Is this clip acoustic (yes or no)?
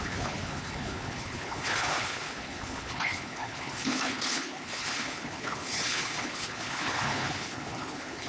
no